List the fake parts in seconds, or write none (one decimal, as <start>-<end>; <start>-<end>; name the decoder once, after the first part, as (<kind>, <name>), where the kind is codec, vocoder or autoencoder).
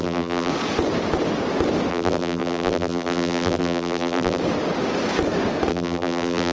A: 0.0-0.5 (vocoder, BigVGAN v2); 1.9-4.4; 5.7-6.5